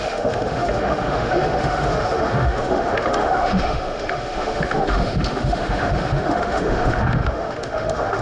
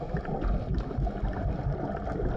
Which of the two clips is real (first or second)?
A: second